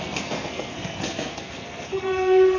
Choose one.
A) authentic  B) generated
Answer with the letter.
B